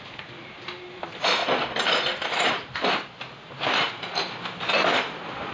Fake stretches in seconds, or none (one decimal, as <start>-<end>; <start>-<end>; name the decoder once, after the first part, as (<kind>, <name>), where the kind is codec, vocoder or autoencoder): none